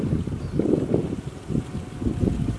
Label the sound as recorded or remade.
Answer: recorded